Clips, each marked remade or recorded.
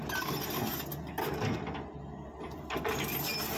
recorded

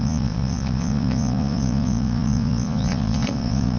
remade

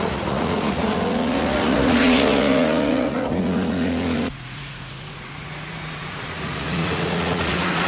remade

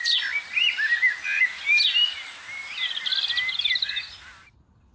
recorded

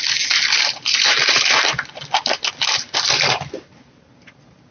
recorded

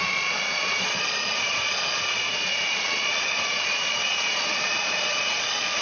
remade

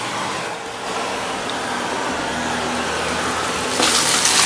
recorded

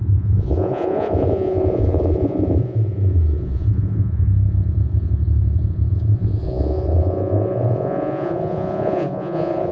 remade